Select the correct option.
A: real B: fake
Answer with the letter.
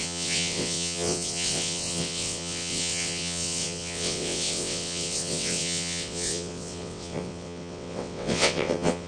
B